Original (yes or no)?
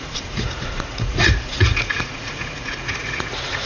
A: no